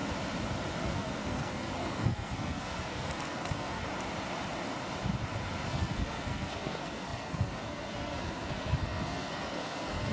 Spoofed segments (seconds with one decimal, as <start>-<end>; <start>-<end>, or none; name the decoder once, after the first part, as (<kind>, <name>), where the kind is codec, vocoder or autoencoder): 0.8-3.8 (codec, SNAC); 5.7-10.1